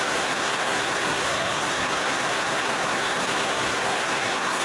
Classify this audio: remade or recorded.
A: remade